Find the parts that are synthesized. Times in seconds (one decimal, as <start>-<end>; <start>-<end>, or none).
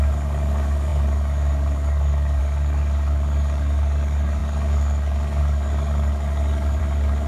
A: 0.0-7.3